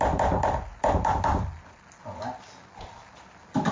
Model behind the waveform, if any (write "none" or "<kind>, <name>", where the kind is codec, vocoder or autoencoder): none